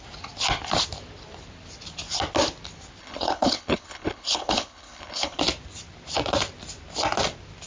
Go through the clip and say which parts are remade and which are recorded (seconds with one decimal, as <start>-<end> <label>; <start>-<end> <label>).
0.0-3.0 recorded; 3.0-5.4 remade; 5.4-7.7 recorded